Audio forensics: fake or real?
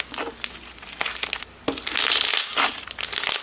real